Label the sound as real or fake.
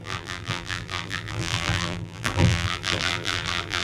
fake